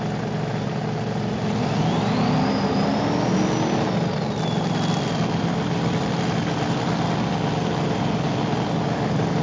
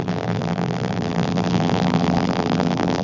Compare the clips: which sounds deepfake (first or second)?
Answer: second